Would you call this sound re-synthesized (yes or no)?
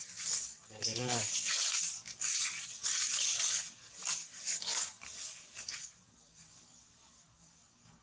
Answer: yes